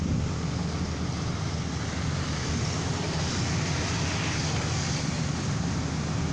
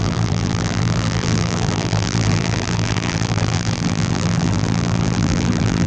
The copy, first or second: second